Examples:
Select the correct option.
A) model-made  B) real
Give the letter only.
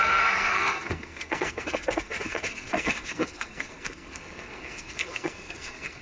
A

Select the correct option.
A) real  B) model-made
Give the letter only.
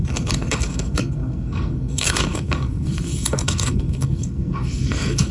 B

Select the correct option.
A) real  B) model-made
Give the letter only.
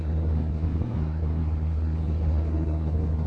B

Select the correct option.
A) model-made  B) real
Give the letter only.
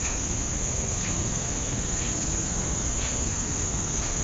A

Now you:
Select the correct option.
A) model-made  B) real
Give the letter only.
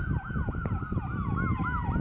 B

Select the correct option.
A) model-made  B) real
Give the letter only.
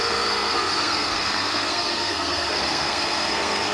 A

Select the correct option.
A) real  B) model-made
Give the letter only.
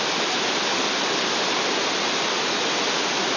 A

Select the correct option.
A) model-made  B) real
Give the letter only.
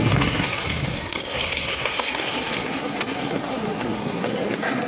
A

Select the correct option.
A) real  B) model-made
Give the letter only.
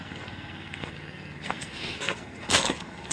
B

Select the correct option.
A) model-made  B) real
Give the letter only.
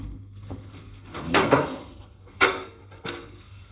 A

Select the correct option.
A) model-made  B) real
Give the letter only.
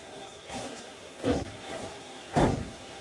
A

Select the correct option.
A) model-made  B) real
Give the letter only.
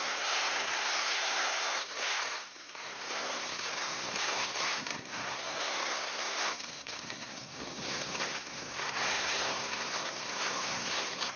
A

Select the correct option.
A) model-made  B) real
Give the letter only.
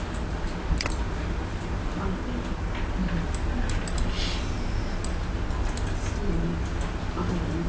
B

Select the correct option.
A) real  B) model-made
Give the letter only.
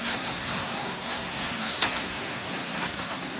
B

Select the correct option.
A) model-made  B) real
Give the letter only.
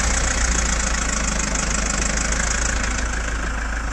B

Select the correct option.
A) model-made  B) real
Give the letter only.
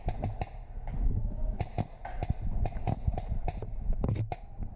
B